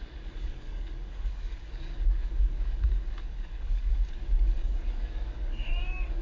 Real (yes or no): no